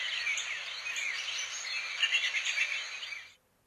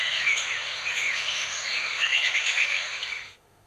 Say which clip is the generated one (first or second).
second